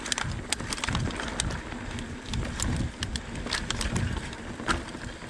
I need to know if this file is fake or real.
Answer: real